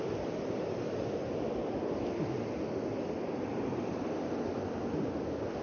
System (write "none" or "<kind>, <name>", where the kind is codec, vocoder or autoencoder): none